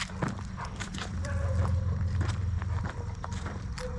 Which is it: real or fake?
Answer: fake